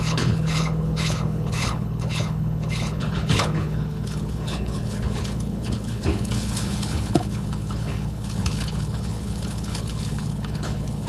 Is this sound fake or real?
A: fake